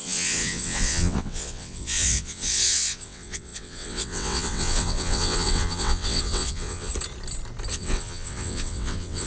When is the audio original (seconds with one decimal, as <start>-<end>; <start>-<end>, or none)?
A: 6.9-7.7

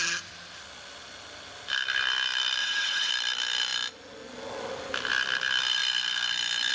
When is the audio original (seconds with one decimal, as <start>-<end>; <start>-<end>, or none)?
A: 0.0-2.6; 3.1-6.7

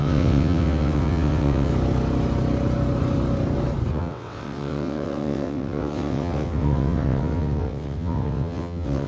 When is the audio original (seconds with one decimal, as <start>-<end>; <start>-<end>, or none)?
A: 1.7-3.9

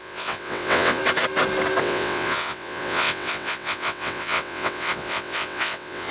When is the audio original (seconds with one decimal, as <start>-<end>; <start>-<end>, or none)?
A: 1.0-1.8

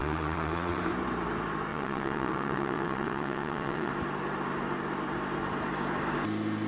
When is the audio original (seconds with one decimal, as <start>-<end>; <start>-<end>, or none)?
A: 0.8-1.7; 3.9-6.7

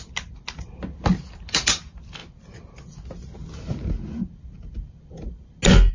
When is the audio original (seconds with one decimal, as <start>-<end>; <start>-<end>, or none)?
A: 0.0-5.9

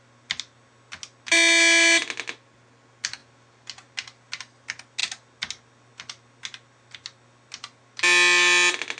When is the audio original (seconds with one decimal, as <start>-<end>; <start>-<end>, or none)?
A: 0.0-9.0